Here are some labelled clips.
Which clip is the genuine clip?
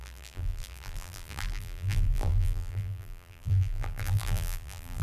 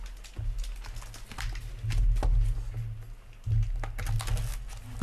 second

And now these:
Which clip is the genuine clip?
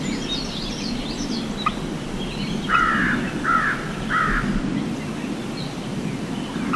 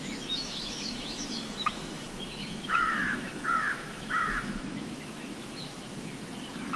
first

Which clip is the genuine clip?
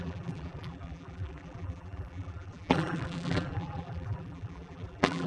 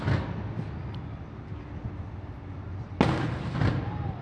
second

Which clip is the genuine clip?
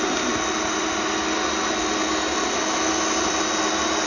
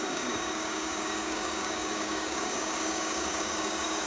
first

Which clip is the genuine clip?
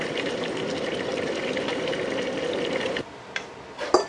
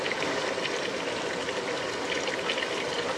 second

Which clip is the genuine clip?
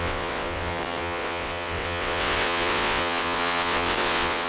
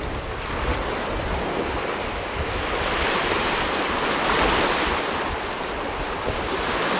second